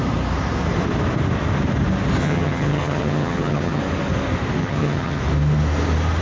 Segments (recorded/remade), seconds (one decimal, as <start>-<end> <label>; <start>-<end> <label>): 0.0-2.2 recorded; 2.2-3.8 remade; 3.8-4.6 recorded; 4.6-5.2 remade; 5.2-6.2 recorded